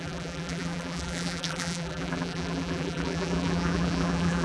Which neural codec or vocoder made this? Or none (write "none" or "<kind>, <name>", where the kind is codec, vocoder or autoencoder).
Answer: vocoder, BigVGAN v2